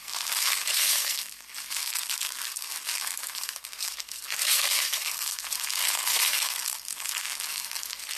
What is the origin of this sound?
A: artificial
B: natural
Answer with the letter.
A